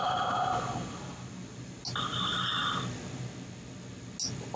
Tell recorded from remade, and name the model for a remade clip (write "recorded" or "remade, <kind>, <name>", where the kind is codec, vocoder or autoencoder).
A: recorded